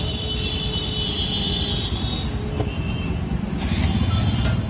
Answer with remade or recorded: recorded